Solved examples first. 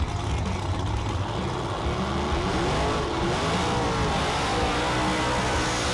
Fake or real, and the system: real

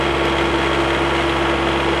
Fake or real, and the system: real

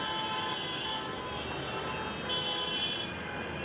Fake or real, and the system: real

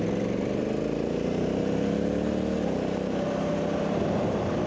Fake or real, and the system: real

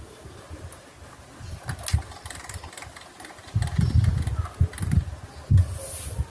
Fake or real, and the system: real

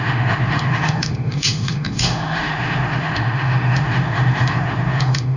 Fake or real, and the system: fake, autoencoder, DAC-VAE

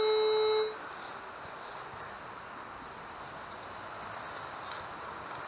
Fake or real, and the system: real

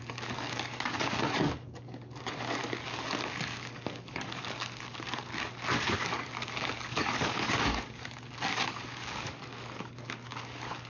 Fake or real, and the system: fake, codec, DAC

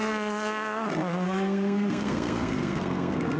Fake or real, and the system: fake, codec, SNAC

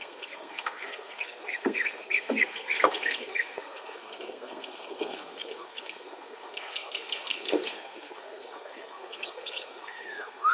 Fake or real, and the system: fake, codec, SNAC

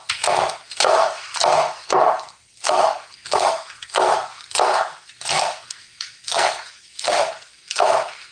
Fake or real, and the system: fake, codec, SNAC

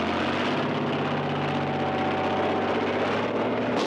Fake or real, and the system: real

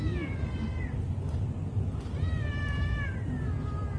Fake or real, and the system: real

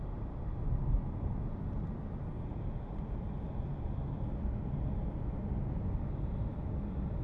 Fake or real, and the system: fake, vocoder, BigVGAN v2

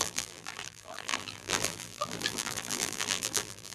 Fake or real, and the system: fake, vocoder, BigVGAN v2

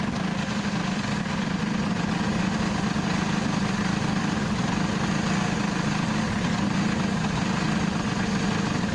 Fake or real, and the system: real